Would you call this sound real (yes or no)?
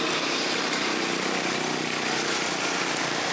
yes